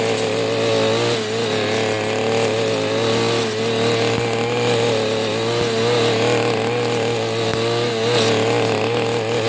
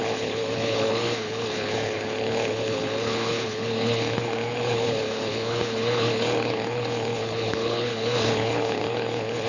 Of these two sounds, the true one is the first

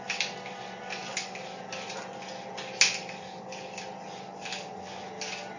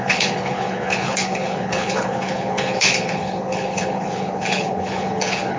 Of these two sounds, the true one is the first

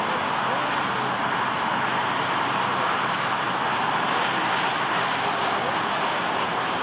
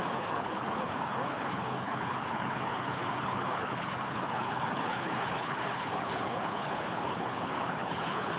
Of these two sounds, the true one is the first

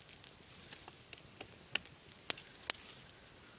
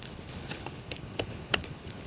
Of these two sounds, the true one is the first